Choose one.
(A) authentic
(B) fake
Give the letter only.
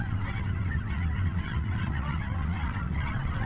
B